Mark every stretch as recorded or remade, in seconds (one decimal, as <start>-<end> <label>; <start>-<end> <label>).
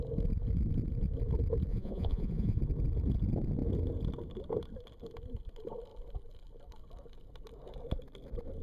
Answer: 0.0-1.7 recorded; 1.7-2.6 remade; 2.6-8.6 recorded